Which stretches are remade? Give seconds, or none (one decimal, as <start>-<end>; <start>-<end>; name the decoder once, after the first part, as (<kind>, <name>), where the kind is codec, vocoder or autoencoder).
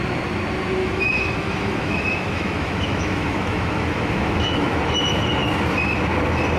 0.8-4.8 (autoencoder, DAC-VAE)